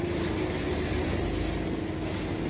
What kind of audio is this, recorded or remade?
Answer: recorded